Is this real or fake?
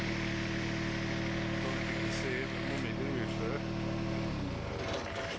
real